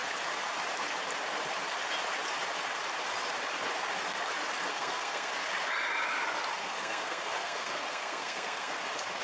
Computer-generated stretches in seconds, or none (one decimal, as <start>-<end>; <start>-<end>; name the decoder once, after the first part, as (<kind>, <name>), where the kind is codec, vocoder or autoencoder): 4.7-5.3 (codec, SNAC); 6.6-8.7